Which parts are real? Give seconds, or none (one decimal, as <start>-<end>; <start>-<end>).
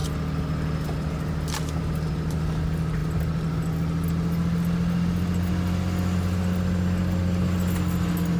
0.0-8.4